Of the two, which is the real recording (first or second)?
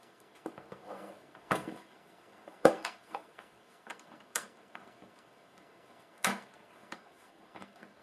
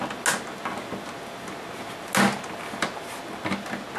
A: second